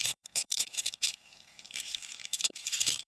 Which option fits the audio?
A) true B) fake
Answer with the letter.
B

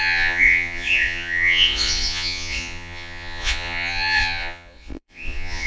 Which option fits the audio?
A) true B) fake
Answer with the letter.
B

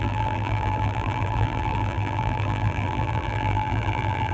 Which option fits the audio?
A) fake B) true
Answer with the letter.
A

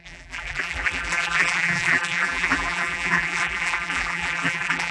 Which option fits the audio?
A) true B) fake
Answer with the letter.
B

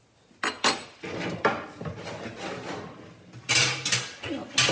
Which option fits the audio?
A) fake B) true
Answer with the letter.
B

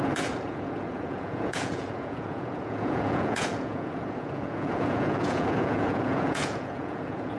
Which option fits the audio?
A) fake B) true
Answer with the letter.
A